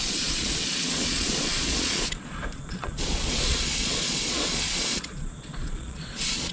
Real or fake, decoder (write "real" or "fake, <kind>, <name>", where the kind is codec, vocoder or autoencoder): fake, vocoder, Vocos